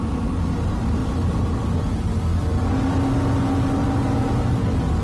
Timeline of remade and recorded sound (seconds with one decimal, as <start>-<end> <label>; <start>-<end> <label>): 0.0-3.8 recorded; 3.8-4.5 remade; 4.5-5.0 recorded